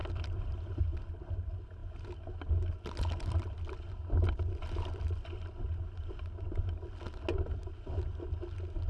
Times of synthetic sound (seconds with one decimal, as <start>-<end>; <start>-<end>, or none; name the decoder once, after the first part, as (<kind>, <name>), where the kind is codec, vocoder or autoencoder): 0.0-0.8 (vocoder, BigVGAN v2)